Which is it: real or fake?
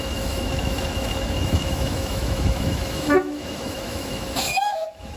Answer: fake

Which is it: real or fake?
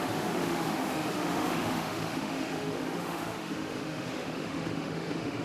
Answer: fake